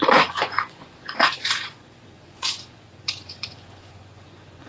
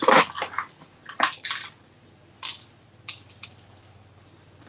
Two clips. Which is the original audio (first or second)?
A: second